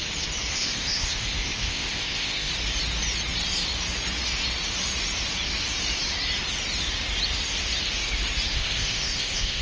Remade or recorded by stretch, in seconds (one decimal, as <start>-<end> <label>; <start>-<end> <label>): 0.0-0.5 recorded; 0.5-2.5 remade; 2.5-8.5 recorded; 8.5-9.6 remade